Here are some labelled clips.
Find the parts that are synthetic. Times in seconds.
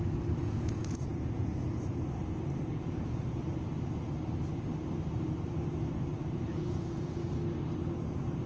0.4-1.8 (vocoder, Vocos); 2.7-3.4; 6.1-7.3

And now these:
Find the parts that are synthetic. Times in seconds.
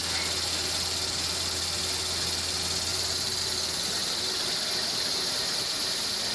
2.9-3.4 (vocoder, BigVGAN v2)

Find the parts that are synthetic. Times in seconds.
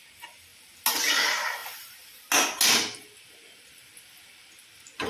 none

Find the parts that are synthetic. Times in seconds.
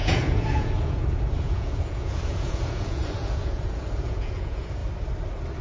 0.0-4.8 (vocoder, Vocos)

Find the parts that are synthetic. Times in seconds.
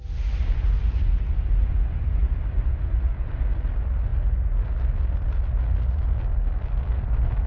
none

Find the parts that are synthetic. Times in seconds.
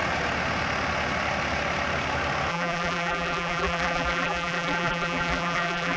2.5-6.0 (vocoder, BigVGAN v2)